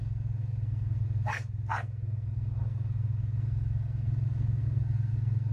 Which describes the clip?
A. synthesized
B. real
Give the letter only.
A